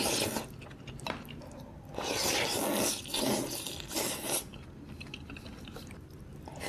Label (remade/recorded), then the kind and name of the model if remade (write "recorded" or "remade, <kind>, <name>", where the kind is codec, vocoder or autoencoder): recorded